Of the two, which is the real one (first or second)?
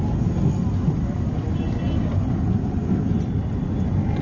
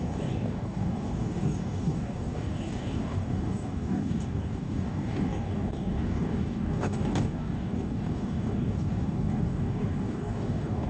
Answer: first